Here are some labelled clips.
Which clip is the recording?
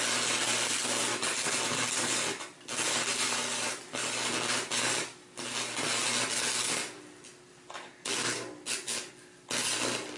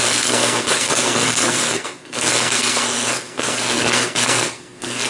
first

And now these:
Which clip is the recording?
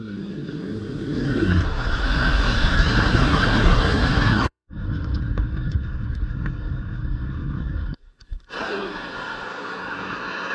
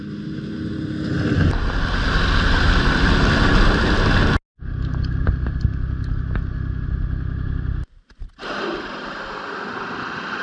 second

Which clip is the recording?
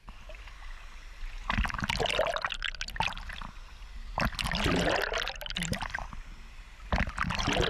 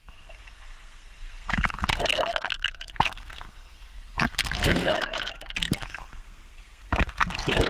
first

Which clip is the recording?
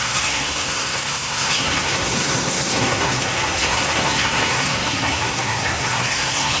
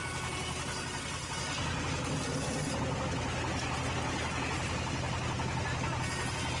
second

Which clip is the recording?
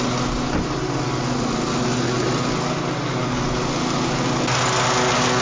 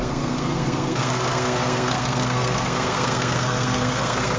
first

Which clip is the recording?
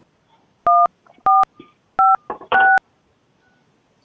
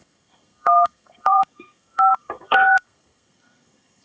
first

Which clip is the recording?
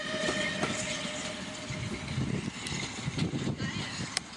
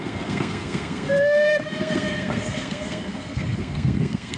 first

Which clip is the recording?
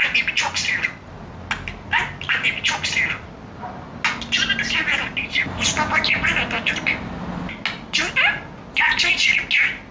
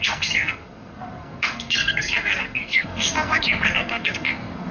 first